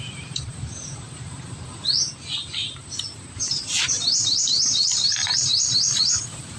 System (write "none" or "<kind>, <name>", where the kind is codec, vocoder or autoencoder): vocoder, BigVGAN v2